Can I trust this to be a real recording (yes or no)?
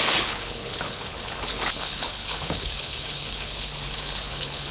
no